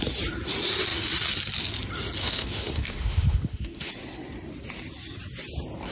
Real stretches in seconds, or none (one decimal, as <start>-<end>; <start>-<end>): 0.0-2.2; 3.9-5.9